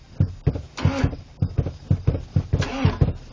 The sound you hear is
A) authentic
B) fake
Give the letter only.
A